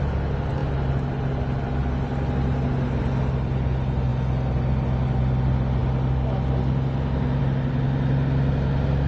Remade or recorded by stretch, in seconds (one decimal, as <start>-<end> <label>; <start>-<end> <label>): 0.0-9.1 recorded